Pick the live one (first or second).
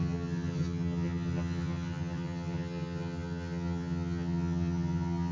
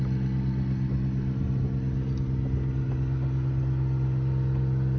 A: second